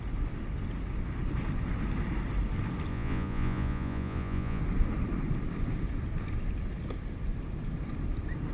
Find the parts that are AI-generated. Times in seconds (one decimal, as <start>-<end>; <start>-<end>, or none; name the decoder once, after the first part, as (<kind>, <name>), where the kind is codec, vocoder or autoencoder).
2.9-4.6 (vocoder, Vocos)

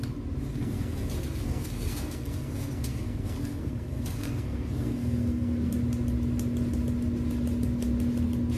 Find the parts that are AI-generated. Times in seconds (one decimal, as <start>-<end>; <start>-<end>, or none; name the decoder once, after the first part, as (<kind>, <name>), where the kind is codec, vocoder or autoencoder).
0.5-5.7 (codec, SNAC)

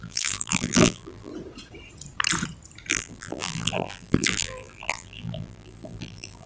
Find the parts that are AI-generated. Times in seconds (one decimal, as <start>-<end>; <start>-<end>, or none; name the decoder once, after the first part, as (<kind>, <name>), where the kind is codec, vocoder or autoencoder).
0.0-1.3 (vocoder, BigVGAN v2); 2.9-6.5

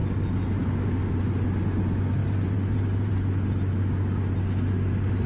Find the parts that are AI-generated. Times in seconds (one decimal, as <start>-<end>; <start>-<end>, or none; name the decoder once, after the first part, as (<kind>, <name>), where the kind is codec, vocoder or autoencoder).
2.2-3.1 (vocoder, BigVGAN v2)

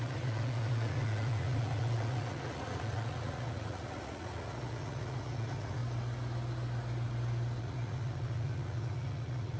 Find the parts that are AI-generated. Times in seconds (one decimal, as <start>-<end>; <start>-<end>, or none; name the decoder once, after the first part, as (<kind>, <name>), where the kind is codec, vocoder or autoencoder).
0.0-5.8 (vocoder, Vocos); 7.6-9.6

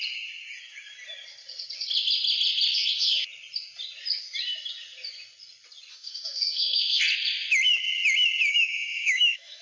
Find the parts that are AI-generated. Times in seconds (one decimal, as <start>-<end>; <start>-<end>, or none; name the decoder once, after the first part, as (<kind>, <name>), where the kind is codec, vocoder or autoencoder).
5.9-7.0 (autoencoder, DAC-VAE); 8.5-9.6